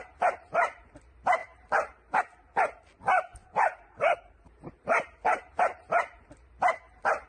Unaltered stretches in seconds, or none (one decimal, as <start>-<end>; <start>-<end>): 0.0-1.4; 2.2-3.4; 6.0-7.3